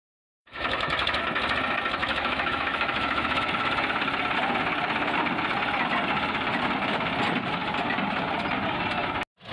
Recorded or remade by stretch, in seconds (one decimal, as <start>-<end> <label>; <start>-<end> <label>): 0.0-0.4 recorded; 0.4-1.2 remade; 1.2-2.0 recorded; 2.0-3.5 remade; 3.5-9.5 recorded